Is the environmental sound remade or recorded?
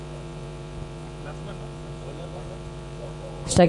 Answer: remade